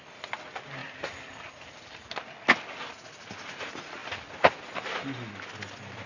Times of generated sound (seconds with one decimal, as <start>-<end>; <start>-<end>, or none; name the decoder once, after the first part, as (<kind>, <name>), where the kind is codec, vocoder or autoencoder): none